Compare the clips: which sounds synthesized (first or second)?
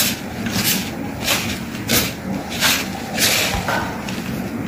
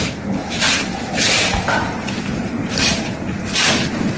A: second